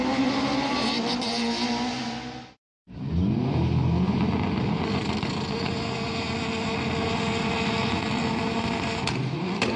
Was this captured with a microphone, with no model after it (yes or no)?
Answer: yes